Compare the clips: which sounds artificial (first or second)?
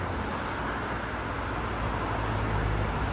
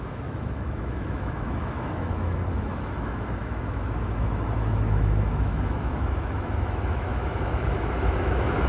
second